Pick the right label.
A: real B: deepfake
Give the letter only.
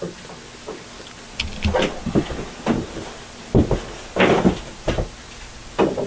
A